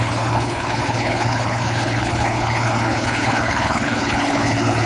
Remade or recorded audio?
remade